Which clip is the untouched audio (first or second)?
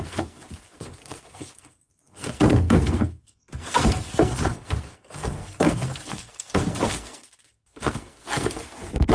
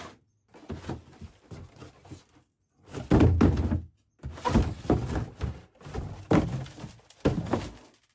second